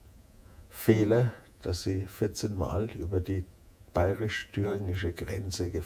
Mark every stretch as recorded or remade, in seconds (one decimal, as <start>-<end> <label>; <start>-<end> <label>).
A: 0.0-5.9 remade